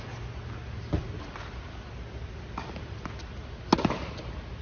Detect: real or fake real